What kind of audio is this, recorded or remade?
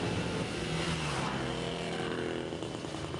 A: recorded